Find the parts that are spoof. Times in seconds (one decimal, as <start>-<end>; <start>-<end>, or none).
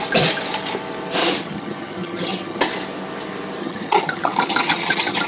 1.2-2.6; 3.6-5.3